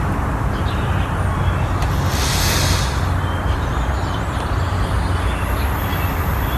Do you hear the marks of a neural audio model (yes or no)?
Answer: no